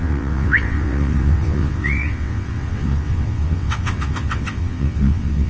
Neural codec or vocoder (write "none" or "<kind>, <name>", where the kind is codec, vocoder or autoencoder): vocoder, WaveNeXt